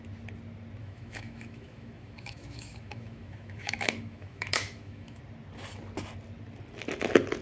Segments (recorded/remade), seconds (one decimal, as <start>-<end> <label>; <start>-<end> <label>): 0.0-0.8 recorded; 0.8-5.2 remade; 5.2-7.4 recorded